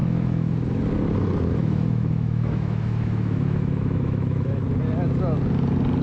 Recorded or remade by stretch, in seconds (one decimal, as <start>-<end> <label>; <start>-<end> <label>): 0.0-0.5 remade; 0.5-1.6 recorded; 1.6-4.6 remade; 4.6-6.0 recorded